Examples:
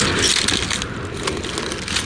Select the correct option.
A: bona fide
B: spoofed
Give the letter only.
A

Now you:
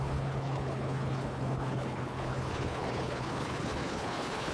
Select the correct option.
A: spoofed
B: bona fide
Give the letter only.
A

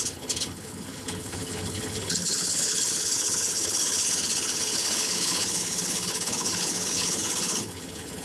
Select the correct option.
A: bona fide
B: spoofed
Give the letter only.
B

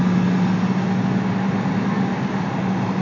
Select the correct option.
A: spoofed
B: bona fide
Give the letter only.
B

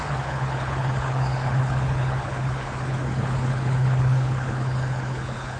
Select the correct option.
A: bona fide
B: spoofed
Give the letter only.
B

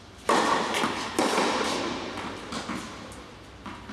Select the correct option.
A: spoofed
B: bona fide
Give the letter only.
B